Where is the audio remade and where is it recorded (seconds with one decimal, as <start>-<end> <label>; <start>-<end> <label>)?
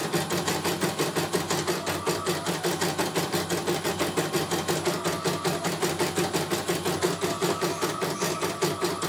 0.0-9.1 recorded